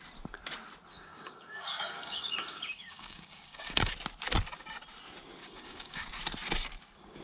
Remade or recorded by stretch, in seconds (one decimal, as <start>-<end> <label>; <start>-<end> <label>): 0.0-0.9 recorded; 0.9-3.9 remade; 3.9-5.4 recorded; 5.4-6.1 remade; 6.1-7.2 recorded